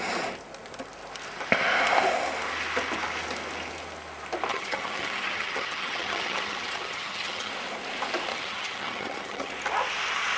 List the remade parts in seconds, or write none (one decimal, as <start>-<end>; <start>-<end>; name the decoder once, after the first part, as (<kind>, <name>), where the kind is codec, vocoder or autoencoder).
4.5-7.5 (vocoder, HiFi-GAN); 8.3-9.5